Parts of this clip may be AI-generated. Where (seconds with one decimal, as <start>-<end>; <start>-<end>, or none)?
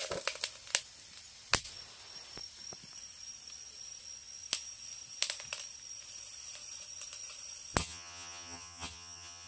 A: 7.8-9.5